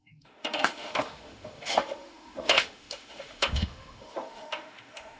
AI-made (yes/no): yes